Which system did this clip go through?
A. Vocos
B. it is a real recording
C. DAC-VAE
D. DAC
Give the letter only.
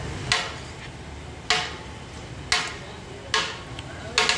B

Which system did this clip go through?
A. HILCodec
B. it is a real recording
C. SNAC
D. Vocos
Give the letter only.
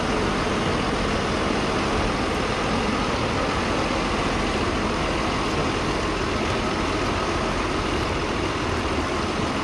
B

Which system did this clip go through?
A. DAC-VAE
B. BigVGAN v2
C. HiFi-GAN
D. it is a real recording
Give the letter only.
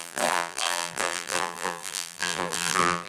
B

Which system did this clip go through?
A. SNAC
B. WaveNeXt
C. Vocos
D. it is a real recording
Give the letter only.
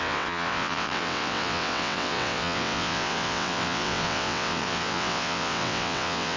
B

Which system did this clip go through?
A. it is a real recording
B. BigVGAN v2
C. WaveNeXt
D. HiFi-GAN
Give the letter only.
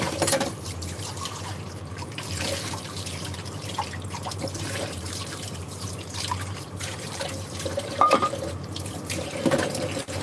B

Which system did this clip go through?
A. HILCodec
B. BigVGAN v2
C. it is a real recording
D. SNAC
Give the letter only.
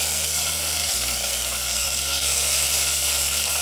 D